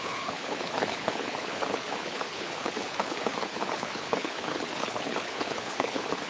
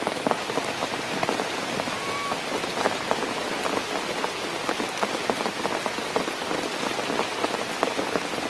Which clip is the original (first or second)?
second